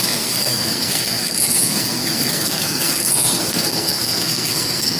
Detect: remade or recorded remade